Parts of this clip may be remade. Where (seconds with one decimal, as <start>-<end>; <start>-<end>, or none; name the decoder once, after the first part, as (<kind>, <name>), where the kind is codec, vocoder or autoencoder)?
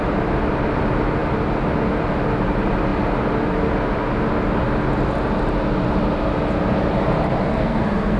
7.5-8.2 (codec, SNAC)